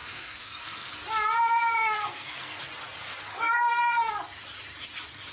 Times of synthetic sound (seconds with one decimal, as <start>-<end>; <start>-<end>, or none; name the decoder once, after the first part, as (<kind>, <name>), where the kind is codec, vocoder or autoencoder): 0.0-0.9 (codec, SNAC); 1.8-2.6; 3.3-4.1

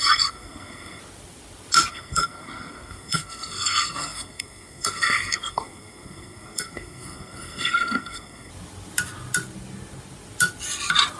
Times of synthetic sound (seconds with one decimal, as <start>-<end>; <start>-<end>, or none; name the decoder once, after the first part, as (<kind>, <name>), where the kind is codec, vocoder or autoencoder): 0.0-1.0 (codec, SNAC); 1.9-8.5